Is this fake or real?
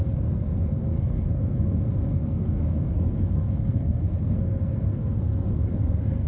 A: fake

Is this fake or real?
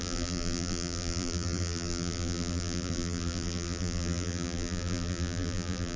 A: fake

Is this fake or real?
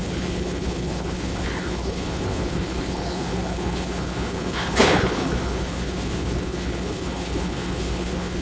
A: fake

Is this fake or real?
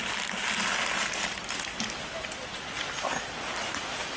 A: real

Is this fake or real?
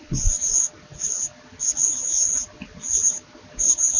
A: real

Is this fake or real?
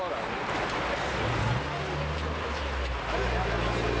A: real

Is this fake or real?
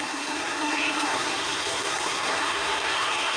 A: fake